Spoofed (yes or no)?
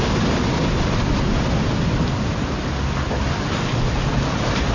no